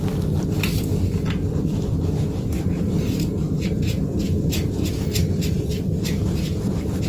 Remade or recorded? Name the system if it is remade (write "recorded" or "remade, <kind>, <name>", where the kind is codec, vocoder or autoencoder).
recorded